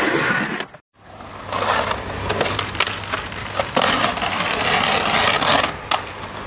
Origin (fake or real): real